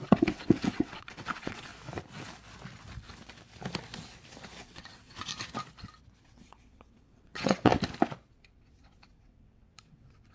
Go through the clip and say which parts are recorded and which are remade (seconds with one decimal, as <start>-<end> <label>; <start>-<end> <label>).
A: 0.0-1.7 remade; 1.7-4.6 recorded; 4.6-5.3 remade; 5.3-6.2 recorded; 6.2-7.7 remade; 7.7-8.3 recorded; 8.3-10.3 remade

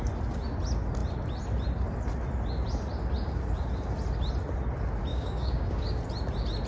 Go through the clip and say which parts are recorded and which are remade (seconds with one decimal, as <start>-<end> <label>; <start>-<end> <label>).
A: 0.0-5.1 recorded; 5.1-6.0 remade; 6.0-6.7 recorded

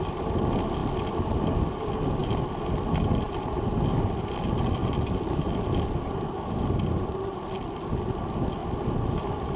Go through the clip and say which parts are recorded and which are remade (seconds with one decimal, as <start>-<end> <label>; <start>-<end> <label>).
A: 0.0-0.8 recorded; 0.8-1.5 remade; 1.5-2.2 recorded; 2.2-3.0 remade; 3.0-4.8 recorded; 4.8-7.8 remade; 7.8-8.6 recorded; 8.6-9.2 remade; 9.2-9.6 recorded